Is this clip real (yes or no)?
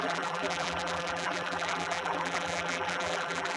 no